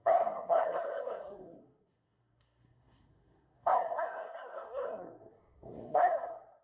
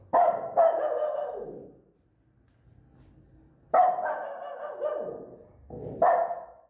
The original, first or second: second